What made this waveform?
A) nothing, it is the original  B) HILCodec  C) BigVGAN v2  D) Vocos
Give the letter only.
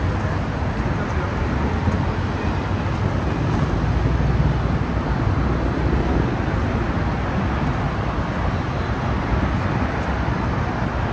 A